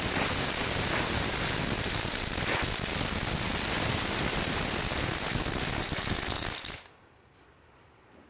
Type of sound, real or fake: real